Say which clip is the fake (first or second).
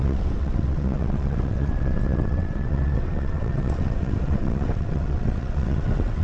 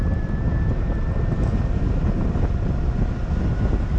first